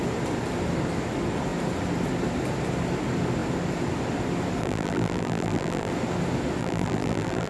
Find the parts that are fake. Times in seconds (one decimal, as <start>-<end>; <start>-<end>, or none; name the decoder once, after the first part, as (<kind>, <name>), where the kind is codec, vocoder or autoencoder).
4.6-5.9 (vocoder, BigVGAN v2); 6.6-7.5